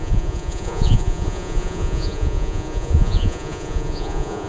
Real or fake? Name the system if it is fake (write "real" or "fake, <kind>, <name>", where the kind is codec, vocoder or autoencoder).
fake, vocoder, Vocos